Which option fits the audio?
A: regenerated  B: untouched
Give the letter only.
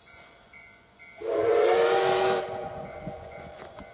A